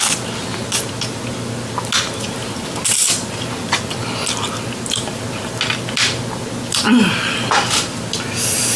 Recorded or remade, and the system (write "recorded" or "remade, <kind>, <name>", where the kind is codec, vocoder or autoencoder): recorded